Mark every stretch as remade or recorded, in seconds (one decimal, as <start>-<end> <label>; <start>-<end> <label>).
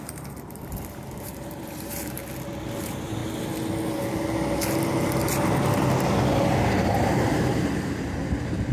0.0-2.2 remade; 2.2-2.8 recorded; 2.8-3.2 remade; 3.2-7.1 recorded; 7.1-8.7 remade